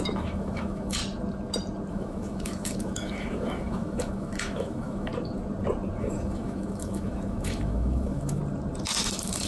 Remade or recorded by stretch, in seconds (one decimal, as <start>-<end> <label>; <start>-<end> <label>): 0.0-1.0 remade; 1.0-1.9 recorded; 1.9-5.1 remade; 5.1-6.0 recorded; 6.0-8.4 remade; 8.4-9.0 recorded; 9.0-9.5 remade

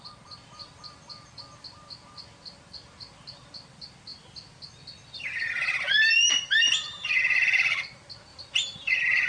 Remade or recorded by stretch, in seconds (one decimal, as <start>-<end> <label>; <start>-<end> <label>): 0.0-7.0 recorded; 7.0-7.9 remade; 7.9-9.3 recorded